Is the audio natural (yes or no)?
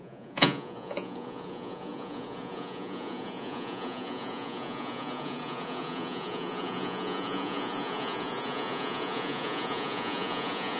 no